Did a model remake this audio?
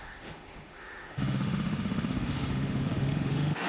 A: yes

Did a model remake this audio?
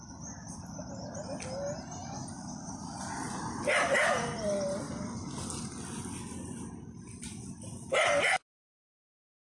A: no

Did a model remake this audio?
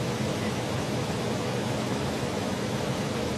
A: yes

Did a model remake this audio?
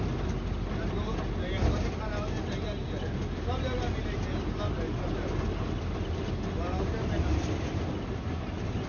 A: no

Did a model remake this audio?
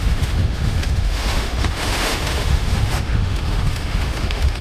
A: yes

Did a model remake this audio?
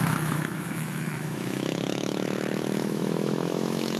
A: yes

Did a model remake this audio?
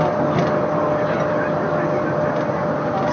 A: no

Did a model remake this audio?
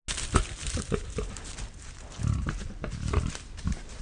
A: no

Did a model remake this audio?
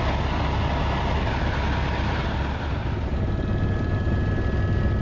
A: no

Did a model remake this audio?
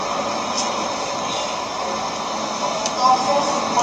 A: no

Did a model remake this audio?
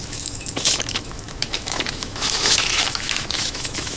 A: yes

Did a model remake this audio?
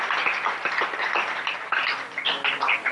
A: no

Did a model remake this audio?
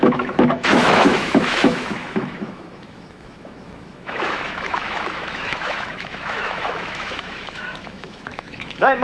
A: yes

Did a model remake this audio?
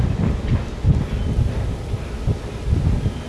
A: no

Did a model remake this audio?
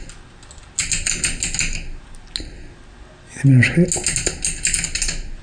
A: no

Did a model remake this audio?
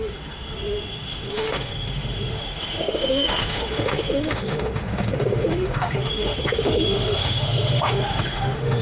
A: yes